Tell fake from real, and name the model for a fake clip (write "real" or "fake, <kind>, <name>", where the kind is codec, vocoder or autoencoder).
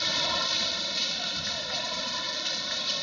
fake, vocoder, BigVGAN v2